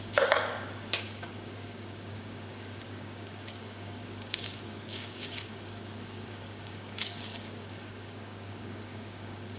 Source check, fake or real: fake